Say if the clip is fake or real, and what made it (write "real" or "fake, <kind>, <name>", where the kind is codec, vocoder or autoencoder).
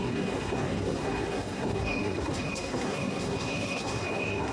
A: fake, codec, SNAC